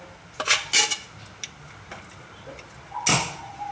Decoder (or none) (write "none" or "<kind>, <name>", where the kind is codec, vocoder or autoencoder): none